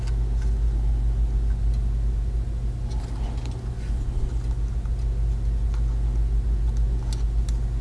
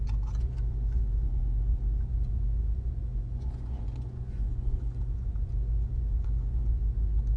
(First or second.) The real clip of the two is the first